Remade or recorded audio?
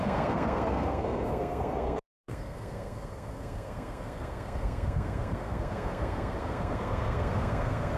remade